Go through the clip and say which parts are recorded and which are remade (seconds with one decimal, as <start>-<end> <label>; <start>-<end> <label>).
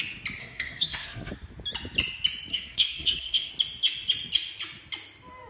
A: 0.0-0.4 recorded; 0.4-1.3 remade; 1.3-2.5 recorded; 2.5-3.5 remade; 3.5-5.5 recorded